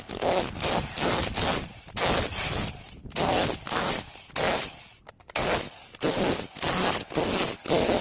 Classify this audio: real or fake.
real